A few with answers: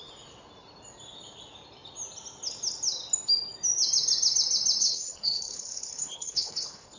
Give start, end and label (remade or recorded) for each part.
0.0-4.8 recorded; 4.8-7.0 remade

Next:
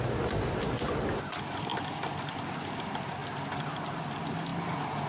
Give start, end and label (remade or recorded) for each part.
0.0-5.1 recorded

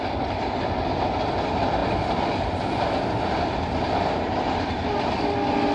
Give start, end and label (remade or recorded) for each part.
0.0-5.7 recorded

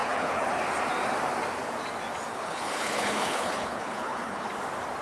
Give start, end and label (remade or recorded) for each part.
0.0-0.6 remade; 0.6-2.3 recorded; 2.3-4.5 remade; 4.5-5.0 recorded

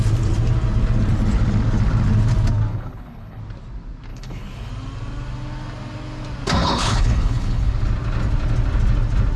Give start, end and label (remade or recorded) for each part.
0.0-2.7 recorded; 2.7-3.4 remade; 3.4-4.1 recorded; 4.1-4.7 remade; 4.7-6.6 recorded; 6.6-7.7 remade; 7.7-9.4 recorded

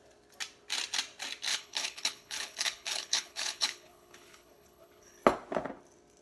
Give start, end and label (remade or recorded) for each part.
0.0-1.5 recorded; 1.5-5.2 remade; 5.2-6.2 recorded

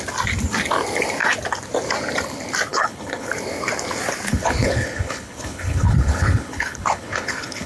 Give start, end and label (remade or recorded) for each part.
0.0-2.7 recorded; 2.7-3.3 remade; 3.3-4.3 recorded; 4.3-7.7 remade

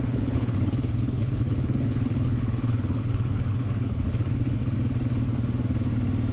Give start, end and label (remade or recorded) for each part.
0.0-4.6 remade; 4.6-6.3 recorded